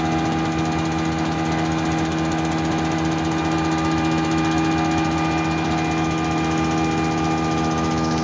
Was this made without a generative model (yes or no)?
yes